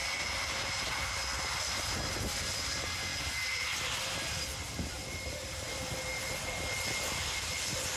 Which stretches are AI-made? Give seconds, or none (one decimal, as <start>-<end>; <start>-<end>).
0.0-8.0